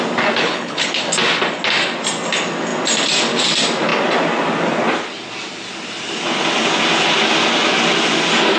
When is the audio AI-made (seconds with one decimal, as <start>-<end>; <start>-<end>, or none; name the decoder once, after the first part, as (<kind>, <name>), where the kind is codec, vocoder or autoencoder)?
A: 0.4-1.0 (codec, HILCodec)